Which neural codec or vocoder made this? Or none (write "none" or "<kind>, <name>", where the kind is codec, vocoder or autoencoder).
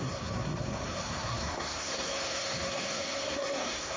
codec, SNAC